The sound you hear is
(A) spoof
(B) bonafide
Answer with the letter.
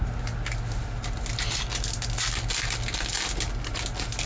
B